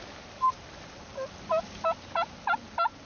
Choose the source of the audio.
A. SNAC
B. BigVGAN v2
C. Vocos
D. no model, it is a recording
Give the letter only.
D